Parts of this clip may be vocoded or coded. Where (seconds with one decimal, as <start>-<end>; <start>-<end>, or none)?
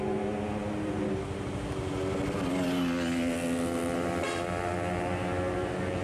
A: none